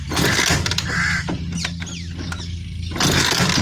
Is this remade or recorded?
recorded